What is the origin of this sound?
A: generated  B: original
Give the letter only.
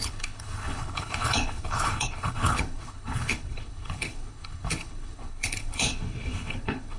A